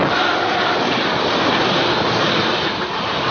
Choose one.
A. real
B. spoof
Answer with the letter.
A